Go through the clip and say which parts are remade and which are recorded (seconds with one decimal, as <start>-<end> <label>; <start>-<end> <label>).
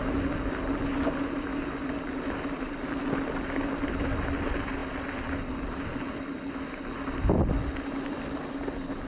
0.0-9.1 recorded